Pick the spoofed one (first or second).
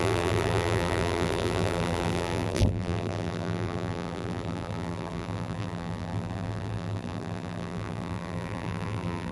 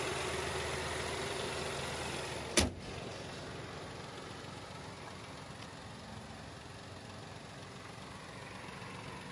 first